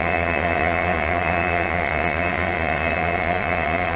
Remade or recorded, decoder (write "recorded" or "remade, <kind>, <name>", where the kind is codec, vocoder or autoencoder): remade, vocoder, Vocos